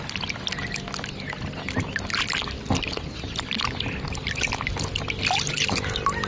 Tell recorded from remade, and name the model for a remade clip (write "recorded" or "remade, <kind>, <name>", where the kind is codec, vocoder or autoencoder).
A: recorded